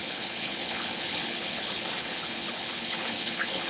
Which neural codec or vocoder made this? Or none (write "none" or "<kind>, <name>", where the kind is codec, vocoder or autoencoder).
codec, HILCodec